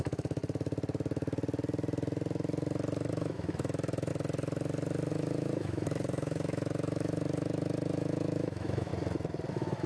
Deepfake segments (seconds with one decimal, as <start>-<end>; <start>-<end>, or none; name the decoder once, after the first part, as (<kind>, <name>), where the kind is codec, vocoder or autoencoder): 0.0-0.4 (autoencoder, DAC-VAE); 3.1-4.1; 5.1-8.9; 9.5-9.9